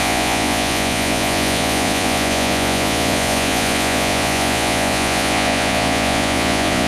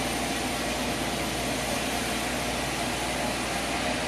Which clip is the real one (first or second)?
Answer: second